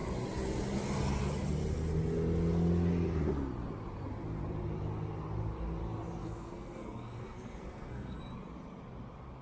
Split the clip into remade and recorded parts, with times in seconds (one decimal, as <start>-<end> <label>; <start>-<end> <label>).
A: 0.0-6.2 recorded; 6.2-8.2 remade; 8.2-9.4 recorded

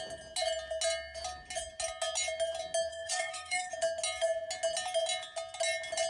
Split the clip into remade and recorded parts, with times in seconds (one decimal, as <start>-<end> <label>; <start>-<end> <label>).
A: 0.0-2.9 recorded; 2.9-3.7 remade; 3.7-6.1 recorded